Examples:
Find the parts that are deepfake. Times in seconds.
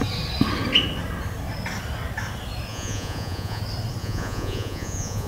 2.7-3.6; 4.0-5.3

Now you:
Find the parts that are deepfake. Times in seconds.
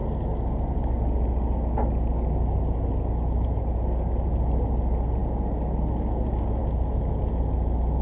none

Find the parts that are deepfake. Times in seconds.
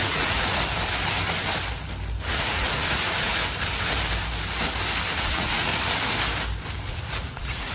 0.0-0.6; 2.3-3.4; 5.1-5.7; 6.9-7.7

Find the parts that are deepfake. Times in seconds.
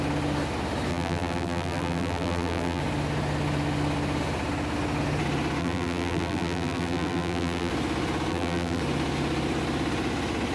0.9-2.8; 5.6-7.7; 8.3-8.8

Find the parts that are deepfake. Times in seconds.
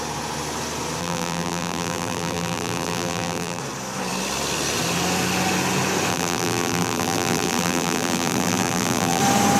1.0-3.6; 6.1-9.2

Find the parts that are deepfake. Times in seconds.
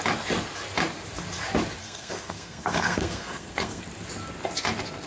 1.8-3.8